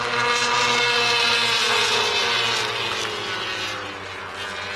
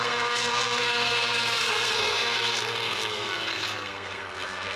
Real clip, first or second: first